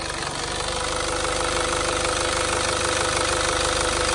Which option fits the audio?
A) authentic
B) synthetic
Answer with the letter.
A